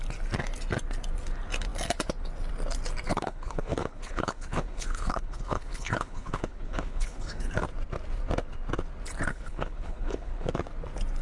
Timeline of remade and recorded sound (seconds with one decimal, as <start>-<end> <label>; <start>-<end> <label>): 0.0-3.1 recorded; 3.1-7.5 remade; 7.5-9.3 recorded; 9.3-10.5 remade; 10.5-11.2 recorded